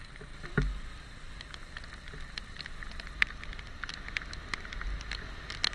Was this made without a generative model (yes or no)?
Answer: yes